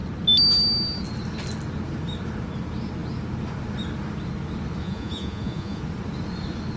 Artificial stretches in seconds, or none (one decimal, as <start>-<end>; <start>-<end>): 4.8-5.8